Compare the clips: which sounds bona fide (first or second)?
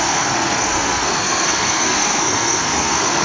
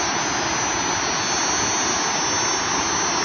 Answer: second